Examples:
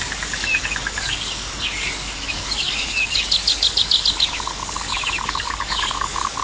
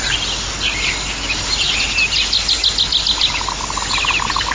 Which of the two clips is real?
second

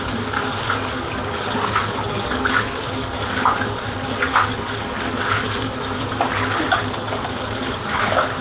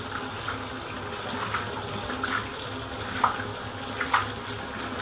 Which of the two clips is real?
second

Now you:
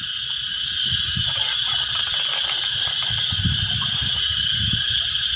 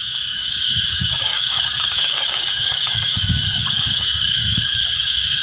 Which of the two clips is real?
first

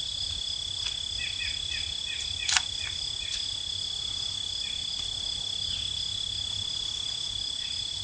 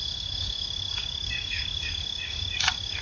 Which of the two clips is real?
first